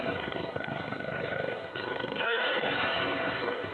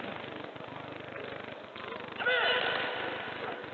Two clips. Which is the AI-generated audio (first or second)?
first